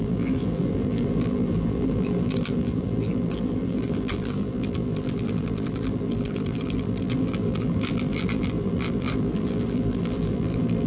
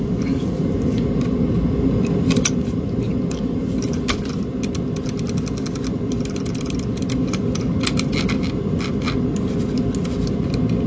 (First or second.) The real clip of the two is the second